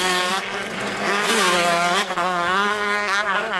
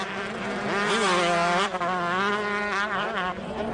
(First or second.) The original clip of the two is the second